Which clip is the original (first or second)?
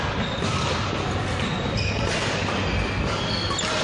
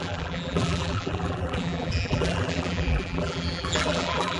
first